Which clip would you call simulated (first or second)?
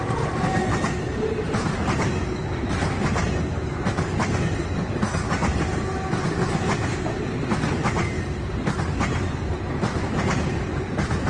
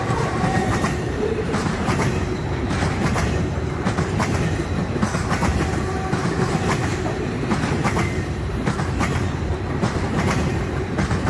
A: second